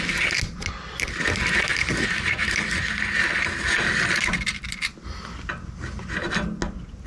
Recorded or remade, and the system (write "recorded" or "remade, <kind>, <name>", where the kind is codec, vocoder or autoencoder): recorded